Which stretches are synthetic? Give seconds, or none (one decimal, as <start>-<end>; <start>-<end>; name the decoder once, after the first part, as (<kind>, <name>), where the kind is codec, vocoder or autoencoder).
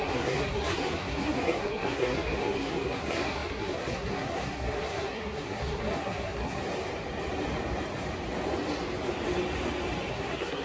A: 0.0-6.6 (codec, SNAC); 10.1-10.6